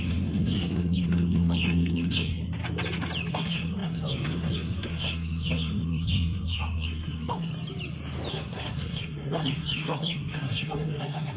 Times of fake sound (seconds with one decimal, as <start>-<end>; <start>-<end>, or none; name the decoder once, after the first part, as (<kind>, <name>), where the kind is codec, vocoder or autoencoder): 0.0-2.4 (codec, SNAC); 3.3-7.5; 8.3-11.4